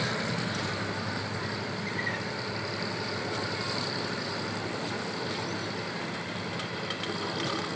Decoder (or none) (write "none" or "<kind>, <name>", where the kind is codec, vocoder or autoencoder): none